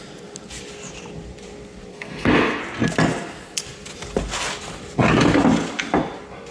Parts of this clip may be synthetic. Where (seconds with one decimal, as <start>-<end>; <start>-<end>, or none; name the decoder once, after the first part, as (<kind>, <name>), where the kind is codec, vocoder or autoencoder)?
1.9-2.6 (codec, SNAC)